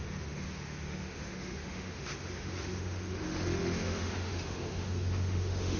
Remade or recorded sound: remade